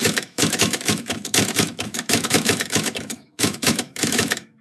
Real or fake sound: fake